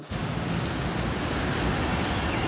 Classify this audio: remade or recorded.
recorded